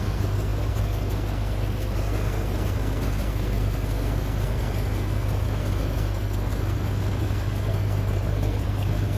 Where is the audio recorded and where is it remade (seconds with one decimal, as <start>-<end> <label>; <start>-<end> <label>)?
0.0-9.2 remade